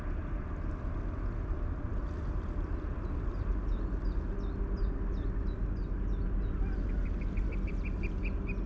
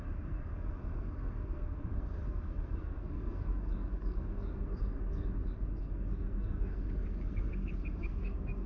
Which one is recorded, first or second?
first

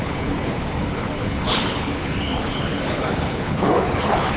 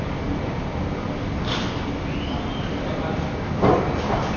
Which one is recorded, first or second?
second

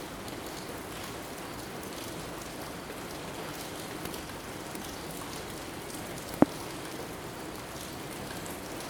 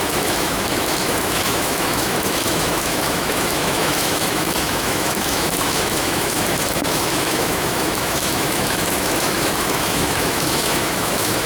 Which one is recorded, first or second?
first